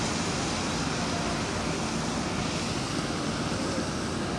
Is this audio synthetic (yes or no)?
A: no